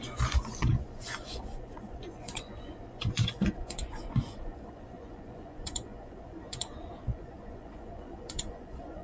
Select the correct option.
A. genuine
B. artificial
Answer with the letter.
B